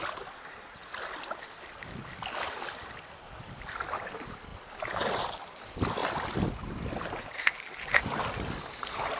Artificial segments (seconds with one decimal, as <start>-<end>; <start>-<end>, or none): 0.0-9.2

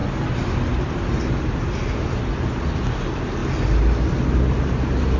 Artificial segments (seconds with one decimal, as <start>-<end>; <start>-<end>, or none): none

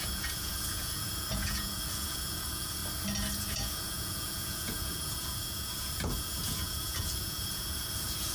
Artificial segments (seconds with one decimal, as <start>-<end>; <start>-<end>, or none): 0.0-2.8; 3.4-8.3

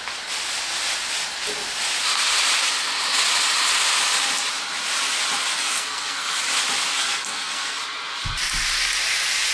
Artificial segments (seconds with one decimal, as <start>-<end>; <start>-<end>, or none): 5.5-6.4; 6.9-7.8

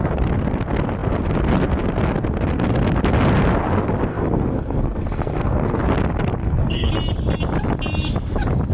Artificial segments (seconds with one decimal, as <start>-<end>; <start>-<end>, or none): 4.1-5.8; 6.4-6.9

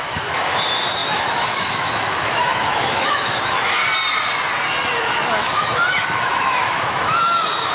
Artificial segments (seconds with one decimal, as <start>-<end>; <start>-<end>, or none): 0.0-3.8; 5.0-7.7